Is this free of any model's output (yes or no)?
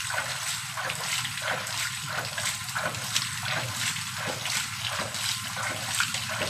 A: yes